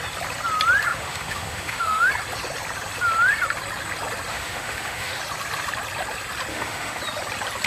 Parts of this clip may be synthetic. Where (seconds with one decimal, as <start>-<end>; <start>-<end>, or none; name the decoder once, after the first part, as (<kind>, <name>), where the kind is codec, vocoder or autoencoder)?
0.9-2.1 (autoencoder, DAC-VAE); 4.3-5.2; 6.5-7.0